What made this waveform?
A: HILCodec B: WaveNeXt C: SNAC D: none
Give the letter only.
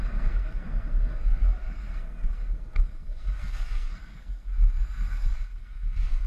C